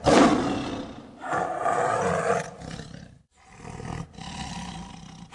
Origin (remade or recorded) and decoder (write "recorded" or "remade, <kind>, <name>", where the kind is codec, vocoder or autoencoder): recorded